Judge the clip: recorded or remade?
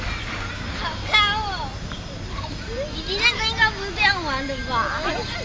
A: recorded